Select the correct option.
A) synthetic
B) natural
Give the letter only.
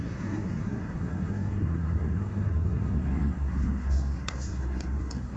A